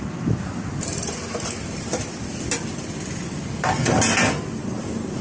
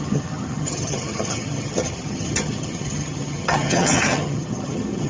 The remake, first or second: second